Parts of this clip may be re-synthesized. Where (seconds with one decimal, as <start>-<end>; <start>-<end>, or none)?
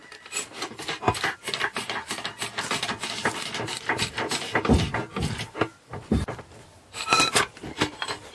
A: none